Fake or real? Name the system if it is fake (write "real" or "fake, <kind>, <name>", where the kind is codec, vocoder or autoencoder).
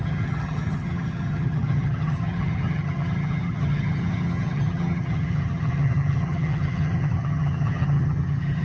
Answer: fake, vocoder, HiFi-GAN